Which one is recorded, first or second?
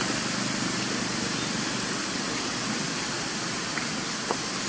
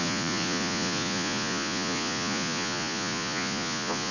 first